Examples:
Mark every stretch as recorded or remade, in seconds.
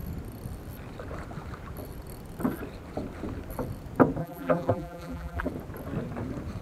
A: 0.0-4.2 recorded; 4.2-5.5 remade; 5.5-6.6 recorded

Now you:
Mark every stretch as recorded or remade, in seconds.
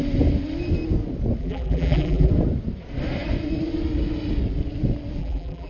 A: 0.0-1.4 recorded; 1.4-2.3 remade; 2.3-5.2 recorded; 5.2-5.7 remade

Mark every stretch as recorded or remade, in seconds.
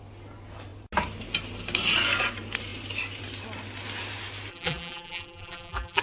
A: 0.0-4.5 recorded; 4.5-6.0 remade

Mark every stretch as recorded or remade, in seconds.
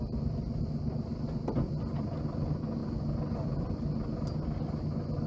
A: 0.0-1.1 recorded; 1.1-2.1 remade; 2.1-5.3 recorded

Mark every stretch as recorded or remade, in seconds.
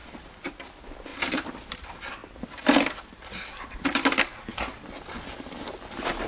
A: 0.0-1.1 recorded; 1.1-1.7 remade; 1.7-4.5 recorded; 4.5-5.6 remade; 5.6-6.3 recorded